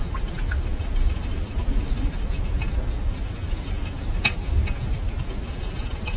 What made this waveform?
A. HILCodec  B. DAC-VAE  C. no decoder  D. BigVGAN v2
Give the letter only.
C